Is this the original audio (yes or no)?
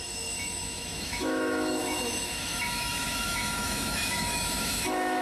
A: no